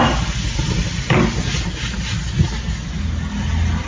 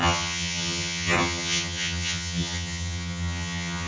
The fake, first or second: second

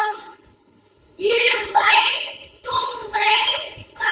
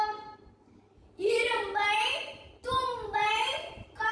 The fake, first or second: first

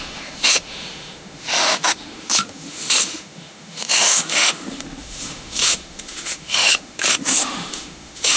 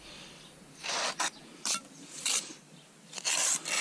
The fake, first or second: first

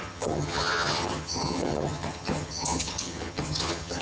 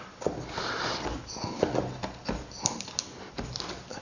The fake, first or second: first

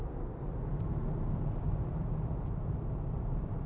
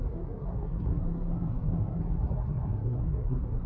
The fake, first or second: second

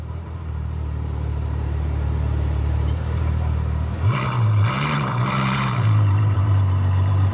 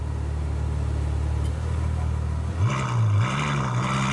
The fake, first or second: first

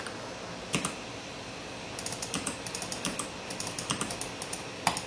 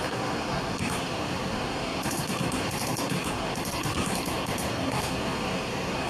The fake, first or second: second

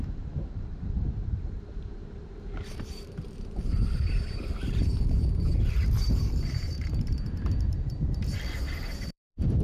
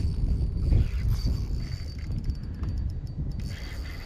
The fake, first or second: first